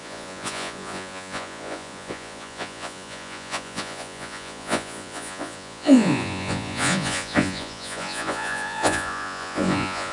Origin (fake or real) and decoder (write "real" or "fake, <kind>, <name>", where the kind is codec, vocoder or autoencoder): fake, vocoder, Vocos